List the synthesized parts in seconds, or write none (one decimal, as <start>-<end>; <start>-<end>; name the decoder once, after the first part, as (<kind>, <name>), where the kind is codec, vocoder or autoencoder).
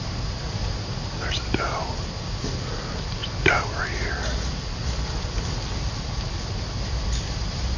none